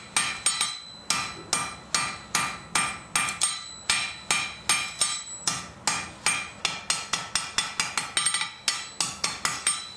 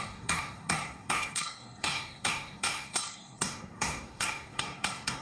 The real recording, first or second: first